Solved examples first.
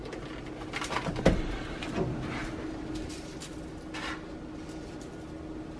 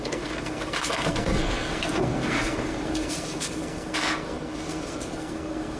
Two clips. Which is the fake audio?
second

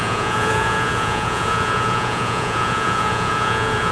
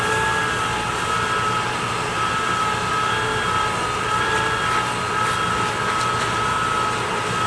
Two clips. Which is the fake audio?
first